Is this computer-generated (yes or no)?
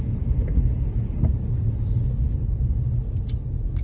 no